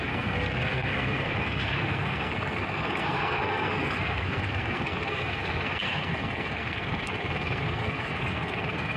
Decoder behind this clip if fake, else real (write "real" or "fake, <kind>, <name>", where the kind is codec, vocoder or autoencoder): fake, codec, SNAC